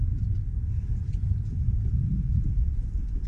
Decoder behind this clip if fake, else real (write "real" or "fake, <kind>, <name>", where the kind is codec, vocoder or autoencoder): real